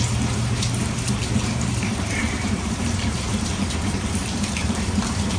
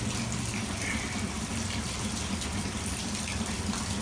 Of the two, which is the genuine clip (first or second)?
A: second